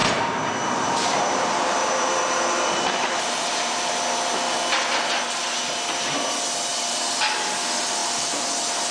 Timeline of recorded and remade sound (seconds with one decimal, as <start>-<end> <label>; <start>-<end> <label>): 0.0-4.0 remade; 4.0-8.0 recorded; 8.0-8.5 remade; 8.5-8.9 recorded